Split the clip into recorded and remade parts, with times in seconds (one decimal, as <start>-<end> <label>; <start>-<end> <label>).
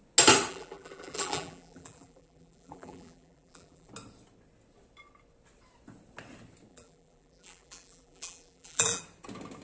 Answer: 0.0-0.5 recorded; 0.5-3.9 remade; 3.9-6.7 recorded; 6.7-9.0 remade; 9.0-9.6 recorded